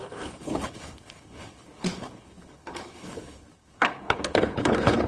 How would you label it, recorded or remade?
remade